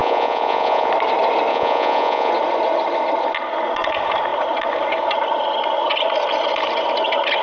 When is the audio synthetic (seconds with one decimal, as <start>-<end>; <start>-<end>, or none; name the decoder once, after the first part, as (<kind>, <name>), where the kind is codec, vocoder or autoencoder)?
0.0-0.9 (vocoder, Vocos); 1.5-2.3